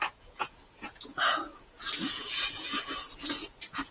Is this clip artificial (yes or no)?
yes